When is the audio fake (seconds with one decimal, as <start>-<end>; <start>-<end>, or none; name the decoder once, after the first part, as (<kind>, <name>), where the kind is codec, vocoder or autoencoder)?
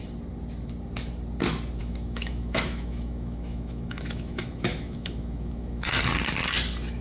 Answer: 1.8-5.9 (autoencoder, DAC-VAE)